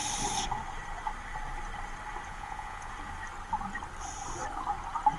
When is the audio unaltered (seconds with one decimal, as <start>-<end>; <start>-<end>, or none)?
0.0-2.3; 2.9-5.2